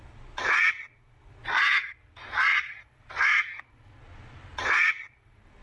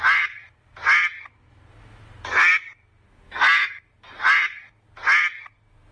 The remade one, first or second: first